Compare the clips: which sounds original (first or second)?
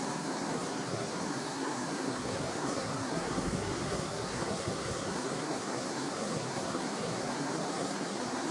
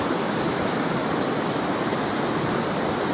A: second